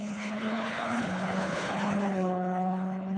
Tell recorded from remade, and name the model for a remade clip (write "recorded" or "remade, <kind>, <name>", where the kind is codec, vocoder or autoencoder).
remade, codec, HILCodec